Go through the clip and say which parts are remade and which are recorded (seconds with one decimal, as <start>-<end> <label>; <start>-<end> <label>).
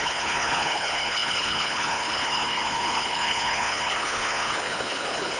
0.0-5.4 remade